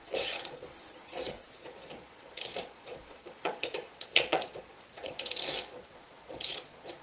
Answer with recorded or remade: remade